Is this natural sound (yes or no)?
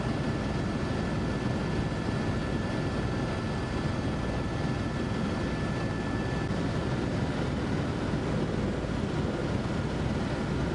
yes